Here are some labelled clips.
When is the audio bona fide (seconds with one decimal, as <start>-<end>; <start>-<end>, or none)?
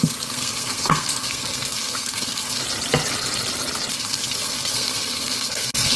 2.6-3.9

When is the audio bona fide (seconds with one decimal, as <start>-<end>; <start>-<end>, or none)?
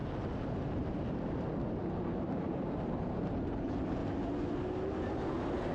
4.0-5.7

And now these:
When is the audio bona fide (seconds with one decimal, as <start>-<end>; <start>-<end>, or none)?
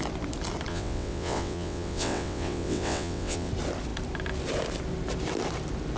0.0-0.7; 3.5-6.0